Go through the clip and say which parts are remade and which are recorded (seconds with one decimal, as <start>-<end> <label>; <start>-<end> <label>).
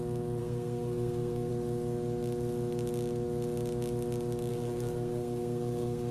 0.0-0.4 recorded; 0.4-1.5 remade; 1.5-4.5 recorded; 4.5-6.1 remade